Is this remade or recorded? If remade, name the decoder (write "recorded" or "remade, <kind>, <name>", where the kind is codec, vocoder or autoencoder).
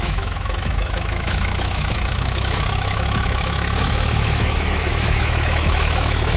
remade, autoencoder, DAC-VAE